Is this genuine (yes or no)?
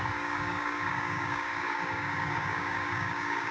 no